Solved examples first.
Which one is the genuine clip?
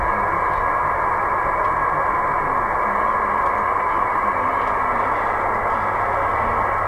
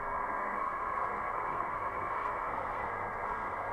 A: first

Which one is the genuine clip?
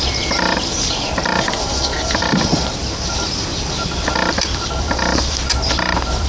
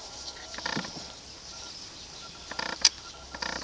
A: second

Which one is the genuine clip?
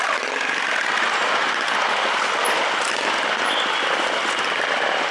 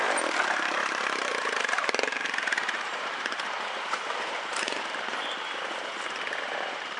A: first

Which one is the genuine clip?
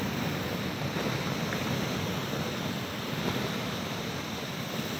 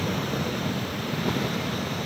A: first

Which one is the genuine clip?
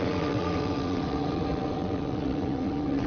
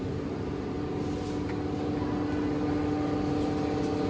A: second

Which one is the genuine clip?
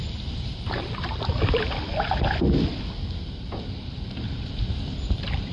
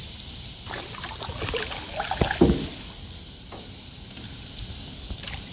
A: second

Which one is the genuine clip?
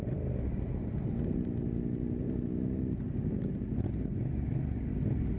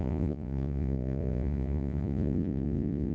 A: first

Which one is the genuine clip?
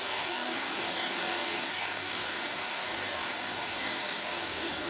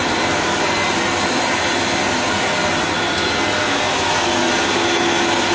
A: second